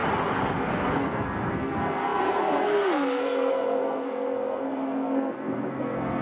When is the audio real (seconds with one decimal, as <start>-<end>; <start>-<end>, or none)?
0.0-0.6